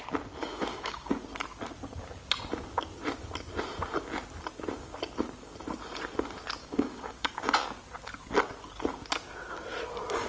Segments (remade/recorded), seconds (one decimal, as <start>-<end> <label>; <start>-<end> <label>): 0.0-0.4 recorded; 0.4-1.1 remade; 1.1-6.6 recorded; 6.6-7.3 remade; 7.3-10.3 recorded